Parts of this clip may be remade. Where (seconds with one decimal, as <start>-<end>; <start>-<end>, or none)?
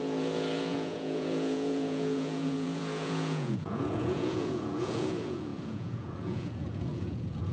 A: 0.0-7.5